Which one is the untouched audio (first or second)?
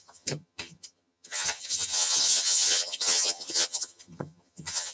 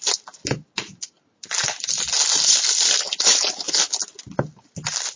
second